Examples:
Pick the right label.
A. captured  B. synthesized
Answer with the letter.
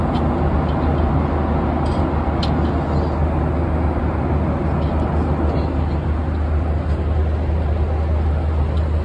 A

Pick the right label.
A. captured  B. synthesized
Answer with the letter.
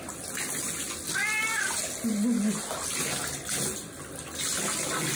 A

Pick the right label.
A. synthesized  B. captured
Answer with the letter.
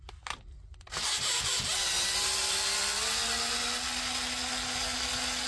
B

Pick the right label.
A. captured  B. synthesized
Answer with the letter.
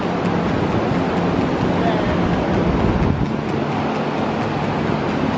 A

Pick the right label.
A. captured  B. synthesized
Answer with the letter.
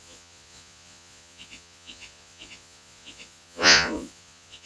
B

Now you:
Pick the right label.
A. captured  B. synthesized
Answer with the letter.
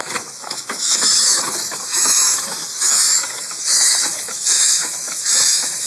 B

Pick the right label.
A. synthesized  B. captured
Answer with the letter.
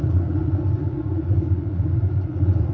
A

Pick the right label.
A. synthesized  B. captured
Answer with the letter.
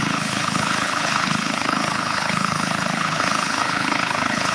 A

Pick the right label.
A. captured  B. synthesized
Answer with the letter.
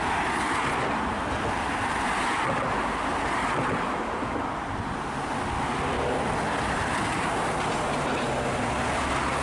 A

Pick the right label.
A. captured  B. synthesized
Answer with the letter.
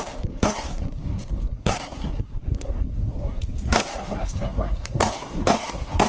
B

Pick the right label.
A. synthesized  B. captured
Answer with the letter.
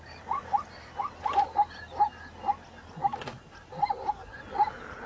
B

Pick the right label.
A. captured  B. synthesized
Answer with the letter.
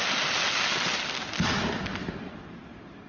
A